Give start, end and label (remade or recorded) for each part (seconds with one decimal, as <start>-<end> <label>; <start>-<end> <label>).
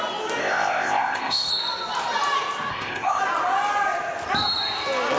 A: 0.0-0.4 recorded; 0.4-1.5 remade; 1.5-2.7 recorded; 2.7-3.2 remade; 3.2-5.2 recorded